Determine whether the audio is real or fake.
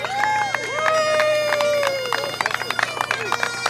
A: real